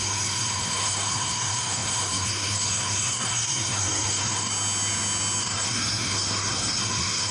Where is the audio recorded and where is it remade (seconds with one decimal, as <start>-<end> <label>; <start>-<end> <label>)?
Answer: 0.0-4.5 remade; 4.5-5.4 recorded; 5.4-7.3 remade